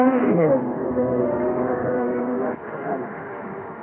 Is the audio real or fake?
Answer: fake